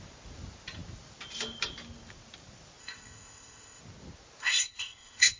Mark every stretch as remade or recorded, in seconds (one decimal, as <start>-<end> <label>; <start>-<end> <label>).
0.0-2.8 recorded; 2.8-3.8 remade; 3.8-4.4 recorded; 4.4-5.4 remade